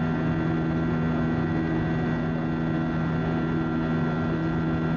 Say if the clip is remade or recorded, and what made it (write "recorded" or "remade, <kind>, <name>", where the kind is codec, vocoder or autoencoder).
recorded